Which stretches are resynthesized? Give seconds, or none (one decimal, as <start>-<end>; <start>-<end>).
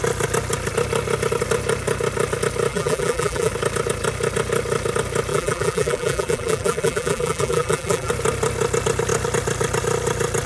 2.7-3.5; 5.3-8.1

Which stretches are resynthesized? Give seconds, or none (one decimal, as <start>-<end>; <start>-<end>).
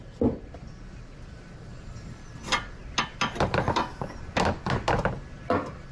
1.7-2.3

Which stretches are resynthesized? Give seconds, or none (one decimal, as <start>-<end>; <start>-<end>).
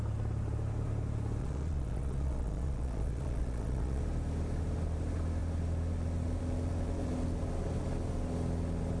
1.4-4.0